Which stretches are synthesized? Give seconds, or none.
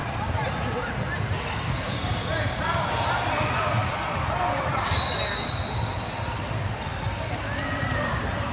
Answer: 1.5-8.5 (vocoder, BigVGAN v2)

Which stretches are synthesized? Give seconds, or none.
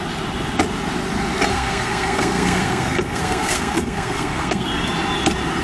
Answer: 1.5-4.7 (codec, SNAC)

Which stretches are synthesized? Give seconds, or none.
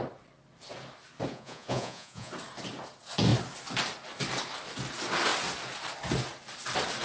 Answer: 1.3-2.3 (vocoder, Vocos)